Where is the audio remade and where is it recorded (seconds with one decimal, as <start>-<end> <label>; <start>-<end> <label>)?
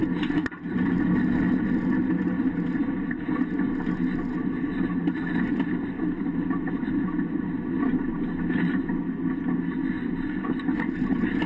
0.0-11.5 recorded